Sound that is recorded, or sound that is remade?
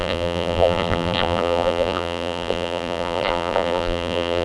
remade